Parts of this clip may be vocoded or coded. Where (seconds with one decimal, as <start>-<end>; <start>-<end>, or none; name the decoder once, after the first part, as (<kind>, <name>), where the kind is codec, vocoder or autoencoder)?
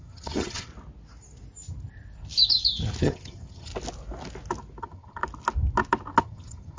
0.0-0.7 (vocoder, HiFi-GAN); 3.0-3.7; 4.8-5.2; 6.2-6.8